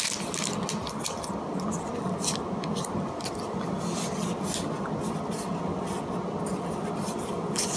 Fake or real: real